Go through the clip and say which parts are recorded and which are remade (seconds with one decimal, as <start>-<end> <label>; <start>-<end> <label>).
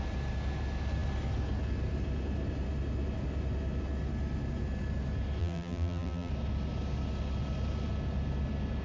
0.0-5.4 recorded; 5.4-6.3 remade; 6.3-8.8 recorded